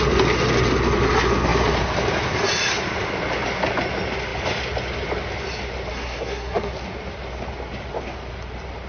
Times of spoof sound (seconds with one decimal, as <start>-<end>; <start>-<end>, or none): 5.9-6.7